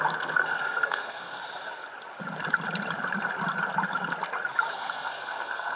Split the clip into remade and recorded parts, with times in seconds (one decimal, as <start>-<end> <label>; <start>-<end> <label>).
0.0-1.4 remade; 1.4-4.7 recorded; 4.7-5.8 remade